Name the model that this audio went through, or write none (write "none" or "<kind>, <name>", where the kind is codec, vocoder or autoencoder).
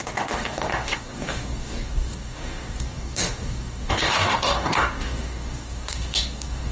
codec, DAC